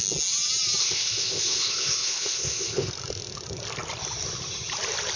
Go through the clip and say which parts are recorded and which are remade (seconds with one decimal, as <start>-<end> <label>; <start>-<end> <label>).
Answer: 0.0-0.8 recorded; 0.8-2.9 remade; 2.9-5.2 recorded

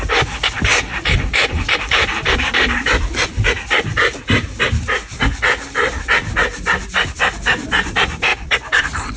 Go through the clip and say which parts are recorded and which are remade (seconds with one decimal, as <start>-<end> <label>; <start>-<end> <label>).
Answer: 0.0-0.7 recorded; 0.7-4.3 remade; 4.3-9.2 recorded

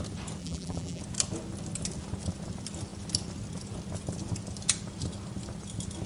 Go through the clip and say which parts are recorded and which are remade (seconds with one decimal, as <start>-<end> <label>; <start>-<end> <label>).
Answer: 0.0-0.4 recorded; 0.4-1.0 remade; 1.0-6.1 recorded

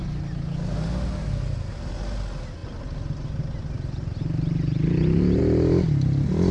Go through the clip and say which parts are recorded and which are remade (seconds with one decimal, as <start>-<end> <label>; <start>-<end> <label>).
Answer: 0.0-6.5 recorded

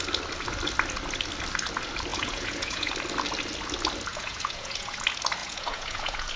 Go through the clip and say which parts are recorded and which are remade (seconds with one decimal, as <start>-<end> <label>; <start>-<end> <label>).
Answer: 0.0-2.1 recorded; 2.1-2.9 remade; 2.9-4.1 recorded; 4.1-5.0 remade; 5.0-5.4 recorded; 5.4-6.4 remade

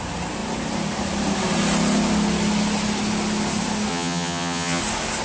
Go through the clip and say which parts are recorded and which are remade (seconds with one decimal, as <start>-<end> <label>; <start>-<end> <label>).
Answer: 0.0-3.9 recorded; 3.9-4.8 remade; 4.8-5.2 recorded

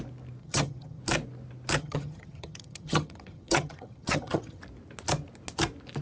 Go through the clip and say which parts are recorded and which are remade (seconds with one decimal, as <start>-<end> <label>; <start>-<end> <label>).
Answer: 0.0-0.4 recorded; 0.4-1.0 remade; 1.0-1.8 recorded; 1.8-4.6 remade; 4.6-6.0 recorded

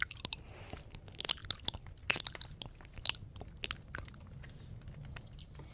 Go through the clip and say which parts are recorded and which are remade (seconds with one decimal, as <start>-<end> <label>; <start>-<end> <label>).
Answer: 0.0-5.7 recorded